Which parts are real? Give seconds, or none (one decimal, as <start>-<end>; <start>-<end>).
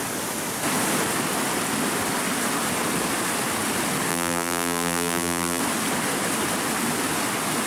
0.0-4.1; 5.6-7.7